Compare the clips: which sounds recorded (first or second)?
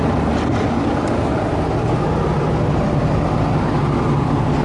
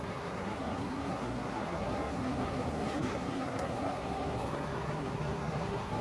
first